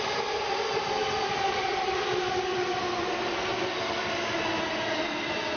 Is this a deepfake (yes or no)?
no